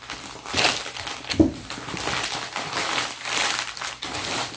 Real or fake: real